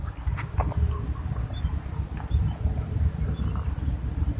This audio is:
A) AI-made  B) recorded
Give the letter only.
B